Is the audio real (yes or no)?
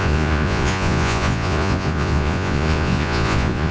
no